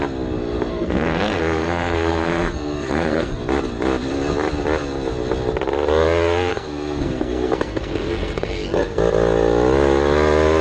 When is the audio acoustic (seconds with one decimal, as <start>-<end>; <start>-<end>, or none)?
0.0-0.7; 3.4-6.5; 9.0-10.6